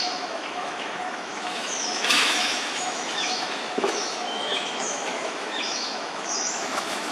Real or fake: fake